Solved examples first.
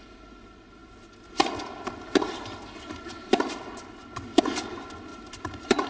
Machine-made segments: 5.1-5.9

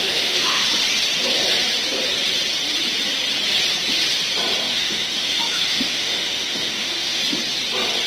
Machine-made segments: 0.0-0.6; 4.6-7.2

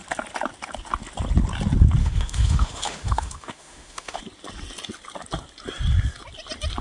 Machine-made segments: 2.0-4.2

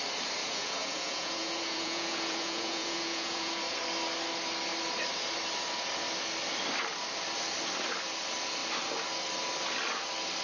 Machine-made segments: 0.4-3.6

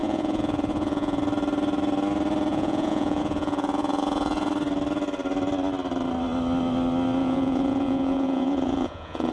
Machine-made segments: 0.0-1.2; 2.5-4.5; 7.2-9.3